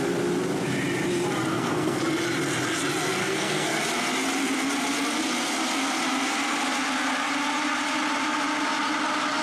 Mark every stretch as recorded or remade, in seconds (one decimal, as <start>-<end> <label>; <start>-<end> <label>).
0.0-1.5 recorded; 1.5-2.0 remade; 2.0-3.2 recorded; 3.2-3.8 remade; 3.8-9.4 recorded